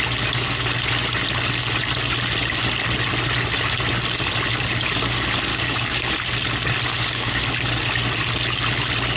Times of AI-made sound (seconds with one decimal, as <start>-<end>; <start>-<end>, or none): 5.5-6.1; 6.9-7.4